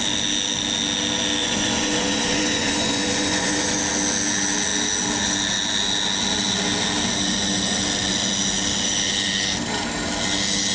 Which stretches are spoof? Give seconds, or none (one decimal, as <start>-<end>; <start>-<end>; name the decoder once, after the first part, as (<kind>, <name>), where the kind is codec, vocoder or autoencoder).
1.4-3.8 (vocoder, Vocos)